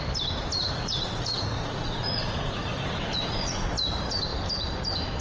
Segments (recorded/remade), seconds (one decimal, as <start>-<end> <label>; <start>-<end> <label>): 0.0-0.6 recorded; 0.6-3.7 remade; 3.7-5.2 recorded